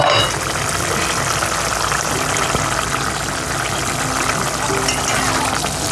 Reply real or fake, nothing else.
real